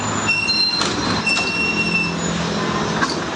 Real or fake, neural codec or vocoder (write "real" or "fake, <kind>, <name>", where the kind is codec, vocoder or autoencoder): real